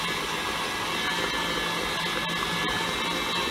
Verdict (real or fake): real